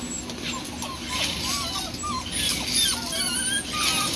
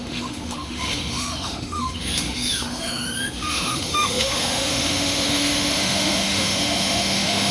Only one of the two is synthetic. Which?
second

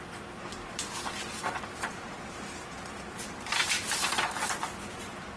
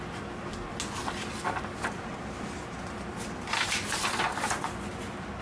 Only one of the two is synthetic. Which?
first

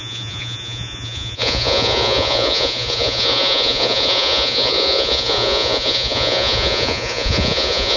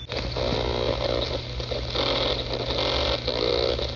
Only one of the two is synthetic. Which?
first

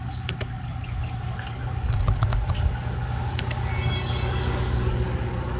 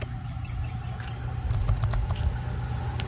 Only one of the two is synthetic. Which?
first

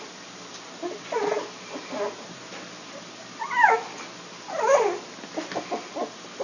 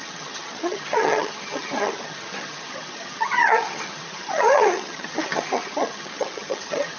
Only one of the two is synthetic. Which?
second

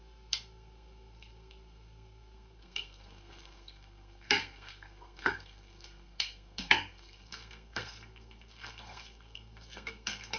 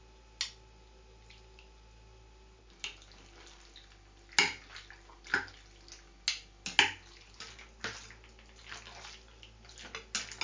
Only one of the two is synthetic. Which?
first